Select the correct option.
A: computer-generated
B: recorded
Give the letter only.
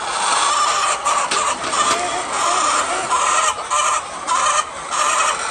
A